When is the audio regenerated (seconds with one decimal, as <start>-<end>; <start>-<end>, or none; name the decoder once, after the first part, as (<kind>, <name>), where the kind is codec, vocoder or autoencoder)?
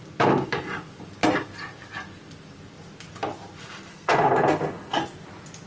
3.9-5.0 (codec, SNAC)